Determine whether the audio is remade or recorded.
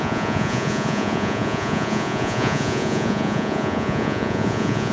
remade